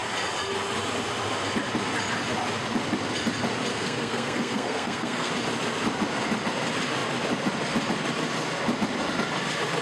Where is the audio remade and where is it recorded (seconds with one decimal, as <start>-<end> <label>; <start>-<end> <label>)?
0.0-3.7 recorded; 3.7-5.3 remade; 5.3-9.8 recorded